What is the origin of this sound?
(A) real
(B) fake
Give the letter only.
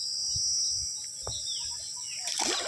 A